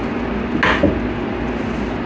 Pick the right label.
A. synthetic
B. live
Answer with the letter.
B